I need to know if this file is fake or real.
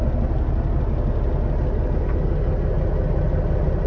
real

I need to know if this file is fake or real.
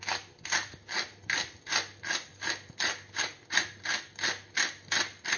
real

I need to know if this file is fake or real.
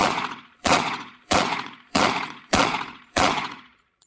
fake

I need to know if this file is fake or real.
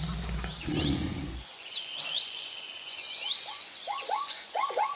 fake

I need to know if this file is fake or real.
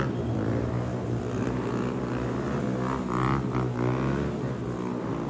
real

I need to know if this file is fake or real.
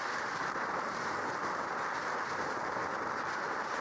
real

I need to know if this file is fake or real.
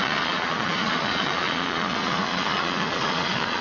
fake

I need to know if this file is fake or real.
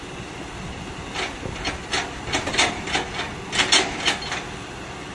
real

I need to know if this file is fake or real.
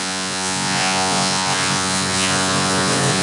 fake